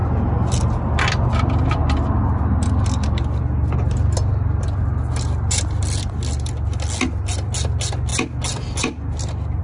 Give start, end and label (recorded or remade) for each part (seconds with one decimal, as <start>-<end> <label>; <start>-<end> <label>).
0.0-9.6 recorded